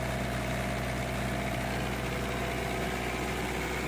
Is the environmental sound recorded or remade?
recorded